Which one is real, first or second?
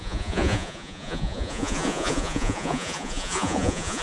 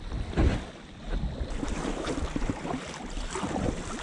second